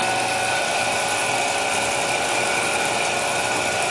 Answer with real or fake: real